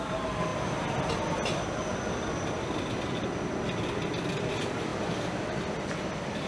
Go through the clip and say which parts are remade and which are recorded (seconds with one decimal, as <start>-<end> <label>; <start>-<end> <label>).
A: 0.0-0.5 remade; 0.5-4.4 recorded; 4.4-6.5 remade